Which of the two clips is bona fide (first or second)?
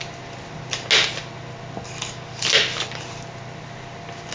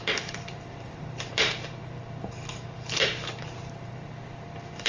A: first